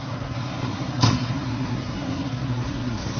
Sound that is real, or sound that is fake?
fake